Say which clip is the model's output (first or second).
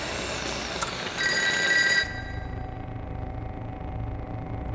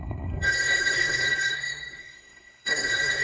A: second